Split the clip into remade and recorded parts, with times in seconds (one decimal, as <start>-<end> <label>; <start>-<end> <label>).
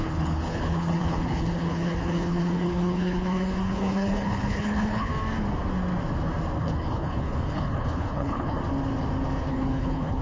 0.0-5.1 remade; 5.1-6.6 recorded; 6.6-8.6 remade; 8.6-9.4 recorded; 9.4-10.2 remade